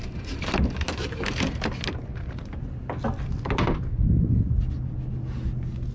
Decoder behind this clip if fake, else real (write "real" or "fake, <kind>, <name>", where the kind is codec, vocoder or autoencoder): real